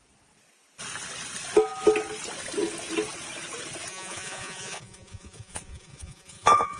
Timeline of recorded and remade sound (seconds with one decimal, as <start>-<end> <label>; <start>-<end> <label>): 0.0-3.9 recorded; 3.9-6.8 remade